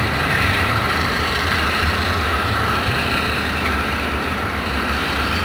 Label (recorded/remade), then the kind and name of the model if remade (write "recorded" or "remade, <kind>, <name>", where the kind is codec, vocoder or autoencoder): remade, vocoder, BigVGAN v2